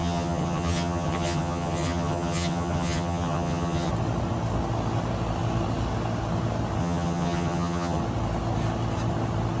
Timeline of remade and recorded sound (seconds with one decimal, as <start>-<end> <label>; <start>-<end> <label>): 0.0-3.9 remade; 3.9-6.8 recorded; 6.8-8.0 remade; 8.0-9.6 recorded